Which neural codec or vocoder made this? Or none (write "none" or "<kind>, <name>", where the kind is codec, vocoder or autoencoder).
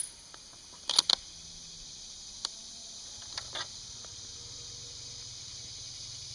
none